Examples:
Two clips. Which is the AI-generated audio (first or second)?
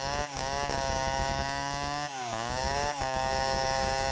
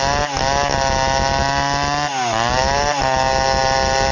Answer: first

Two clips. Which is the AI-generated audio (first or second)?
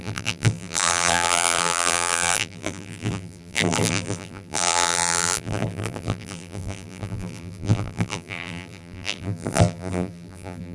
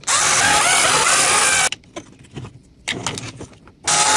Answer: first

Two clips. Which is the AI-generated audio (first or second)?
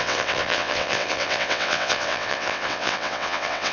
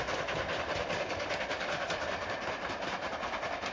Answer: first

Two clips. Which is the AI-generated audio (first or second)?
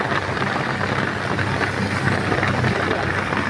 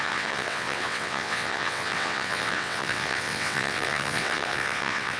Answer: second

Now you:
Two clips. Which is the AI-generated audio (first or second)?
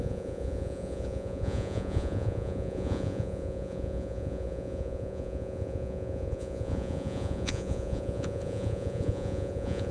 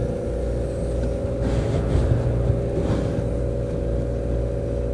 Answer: first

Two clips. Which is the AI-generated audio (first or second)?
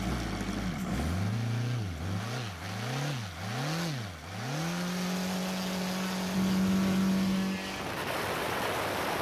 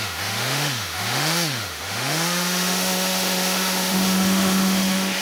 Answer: second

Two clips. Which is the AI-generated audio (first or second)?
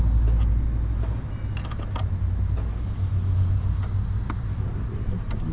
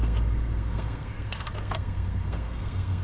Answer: second